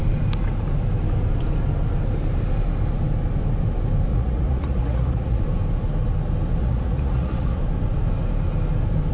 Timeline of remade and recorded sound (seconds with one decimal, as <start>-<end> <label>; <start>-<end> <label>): 0.0-4.1 recorded; 4.1-5.4 remade; 5.4-6.6 recorded; 6.6-7.6 remade; 7.6-9.1 recorded